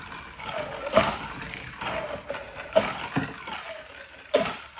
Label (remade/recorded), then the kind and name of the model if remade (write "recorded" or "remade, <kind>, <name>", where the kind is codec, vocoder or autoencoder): recorded